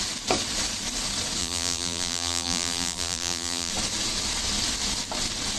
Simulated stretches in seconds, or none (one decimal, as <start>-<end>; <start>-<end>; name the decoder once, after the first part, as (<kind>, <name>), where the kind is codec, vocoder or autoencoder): 1.4-3.7 (vocoder, BigVGAN v2)